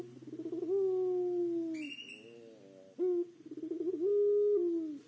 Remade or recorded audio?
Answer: recorded